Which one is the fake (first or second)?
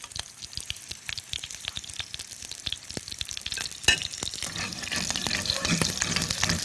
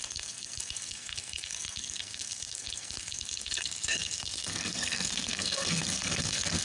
second